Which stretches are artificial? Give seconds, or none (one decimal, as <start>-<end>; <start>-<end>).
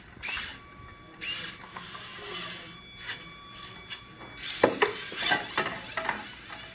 none